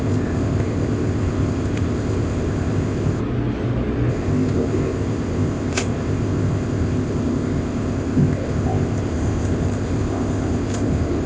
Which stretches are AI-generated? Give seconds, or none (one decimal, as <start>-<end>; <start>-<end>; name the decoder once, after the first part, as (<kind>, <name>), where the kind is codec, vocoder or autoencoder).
0.0-3.2 (codec, ZipCodec); 4.1-11.3